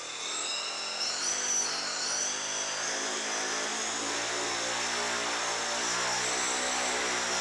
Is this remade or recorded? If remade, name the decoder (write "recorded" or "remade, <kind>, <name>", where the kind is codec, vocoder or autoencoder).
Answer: recorded